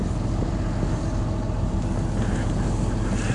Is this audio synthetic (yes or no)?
no